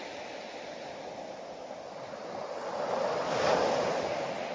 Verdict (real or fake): real